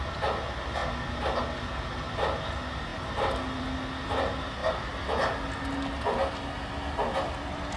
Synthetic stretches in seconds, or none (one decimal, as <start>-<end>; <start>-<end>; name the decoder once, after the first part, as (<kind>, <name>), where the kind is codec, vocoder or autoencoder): none